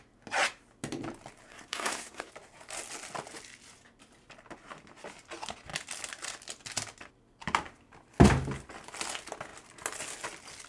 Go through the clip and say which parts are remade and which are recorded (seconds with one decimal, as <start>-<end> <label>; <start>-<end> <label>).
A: 0.0-1.5 recorded; 1.5-2.3 remade; 2.3-10.7 recorded

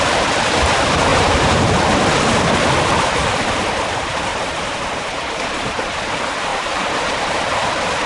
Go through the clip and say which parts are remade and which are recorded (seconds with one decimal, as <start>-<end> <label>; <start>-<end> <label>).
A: 0.0-1.1 recorded; 1.1-1.7 remade; 1.7-4.3 recorded; 4.3-5.8 remade; 5.8-6.5 recorded; 6.5-7.2 remade; 7.2-8.1 recorded